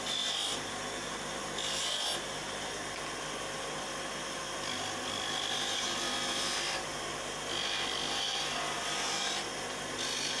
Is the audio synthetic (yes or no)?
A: no